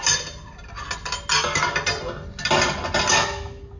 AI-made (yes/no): no